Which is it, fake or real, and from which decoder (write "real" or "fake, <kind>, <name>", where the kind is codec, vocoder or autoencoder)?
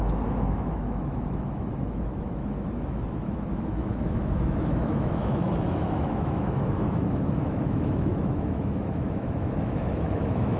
fake, autoencoder, DAC-VAE